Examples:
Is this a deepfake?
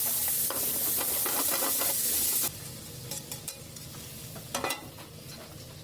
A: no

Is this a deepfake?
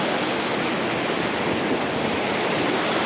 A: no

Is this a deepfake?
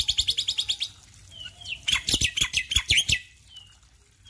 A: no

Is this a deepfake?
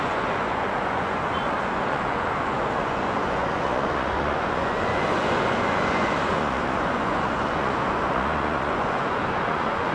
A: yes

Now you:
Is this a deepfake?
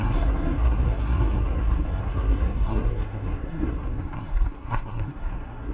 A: yes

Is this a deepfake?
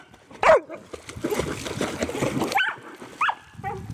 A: no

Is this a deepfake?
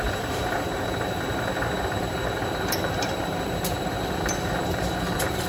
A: yes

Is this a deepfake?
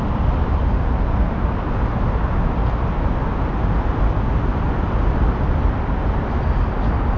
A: no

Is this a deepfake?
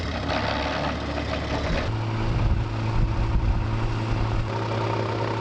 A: no